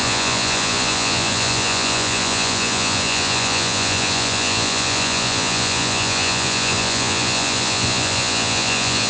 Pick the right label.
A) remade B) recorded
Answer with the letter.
A